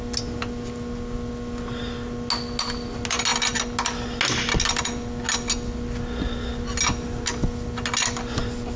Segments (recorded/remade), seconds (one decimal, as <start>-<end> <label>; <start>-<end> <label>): 0.0-8.8 recorded